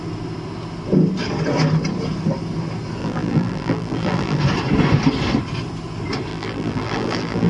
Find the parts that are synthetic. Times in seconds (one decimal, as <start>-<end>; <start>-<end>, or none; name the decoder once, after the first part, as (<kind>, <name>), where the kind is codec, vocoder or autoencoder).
3.0-4.4 (vocoder, BigVGAN v2); 6.3-7.5